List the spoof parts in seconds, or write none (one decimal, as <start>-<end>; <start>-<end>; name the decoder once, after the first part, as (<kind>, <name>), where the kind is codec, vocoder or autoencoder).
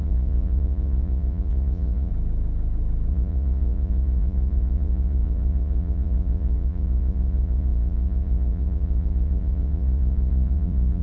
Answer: 0.0-2.1 (vocoder, Vocos); 3.1-11.0